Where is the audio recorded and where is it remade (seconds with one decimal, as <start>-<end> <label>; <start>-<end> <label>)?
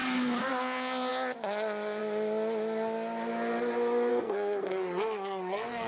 0.0-4.1 recorded; 4.1-5.9 remade